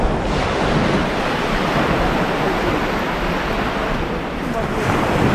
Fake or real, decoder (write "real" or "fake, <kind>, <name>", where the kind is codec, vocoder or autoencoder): real